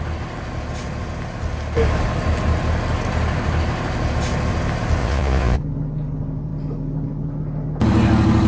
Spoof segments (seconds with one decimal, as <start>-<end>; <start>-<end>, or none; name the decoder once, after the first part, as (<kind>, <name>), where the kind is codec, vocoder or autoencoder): 5.0-5.6 (vocoder, Vocos)